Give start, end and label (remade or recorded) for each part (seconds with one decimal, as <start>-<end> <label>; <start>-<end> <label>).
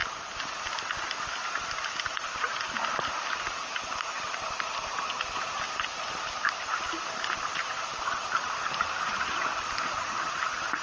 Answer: 0.0-1.2 remade; 1.2-10.8 recorded